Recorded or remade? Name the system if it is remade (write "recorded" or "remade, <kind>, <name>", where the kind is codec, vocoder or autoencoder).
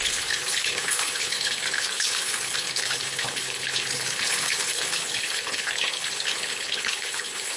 remade, codec, HILCodec